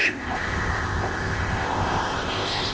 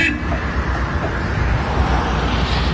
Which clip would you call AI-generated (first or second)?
first